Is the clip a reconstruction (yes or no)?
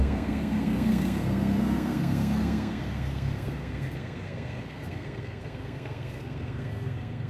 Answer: yes